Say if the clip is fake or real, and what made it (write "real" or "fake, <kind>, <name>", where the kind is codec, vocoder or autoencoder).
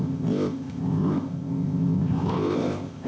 fake, codec, ZipCodec